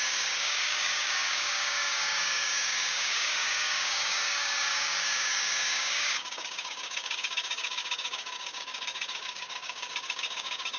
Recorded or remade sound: remade